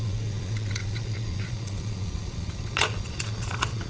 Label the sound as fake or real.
fake